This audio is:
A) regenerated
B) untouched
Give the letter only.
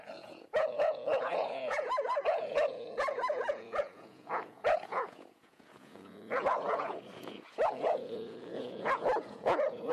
A